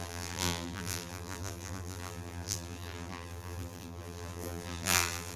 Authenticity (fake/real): fake